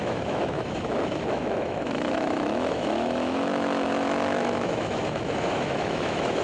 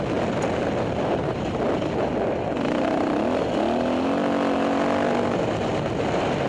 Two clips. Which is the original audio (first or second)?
second